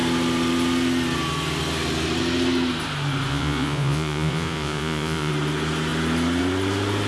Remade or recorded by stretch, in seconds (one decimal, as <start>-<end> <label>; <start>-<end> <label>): 0.0-3.3 recorded; 3.3-5.3 remade; 5.3-7.1 recorded